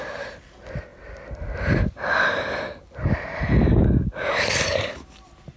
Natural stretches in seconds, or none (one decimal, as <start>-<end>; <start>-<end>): 0.0-5.6